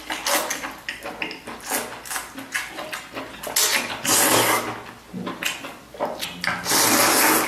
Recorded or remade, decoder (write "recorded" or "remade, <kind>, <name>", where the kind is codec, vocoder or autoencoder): recorded